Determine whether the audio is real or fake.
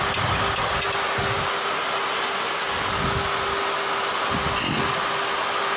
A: real